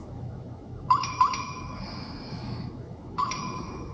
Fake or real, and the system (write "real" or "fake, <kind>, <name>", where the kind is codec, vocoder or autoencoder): fake, autoencoder, DAC-VAE